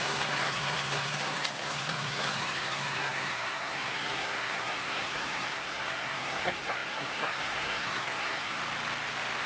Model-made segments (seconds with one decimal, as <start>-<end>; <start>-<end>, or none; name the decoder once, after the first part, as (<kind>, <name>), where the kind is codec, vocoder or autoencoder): 0.0-8.6 (codec, SNAC)